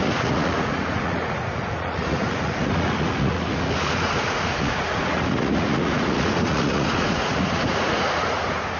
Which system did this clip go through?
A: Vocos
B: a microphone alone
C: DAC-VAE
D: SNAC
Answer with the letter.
A